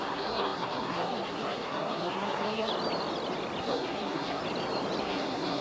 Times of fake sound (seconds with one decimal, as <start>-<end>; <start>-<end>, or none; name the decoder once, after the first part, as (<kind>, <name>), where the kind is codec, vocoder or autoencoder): 0.0-2.7 (codec, SNAC); 3.6-4.4; 5.0-5.6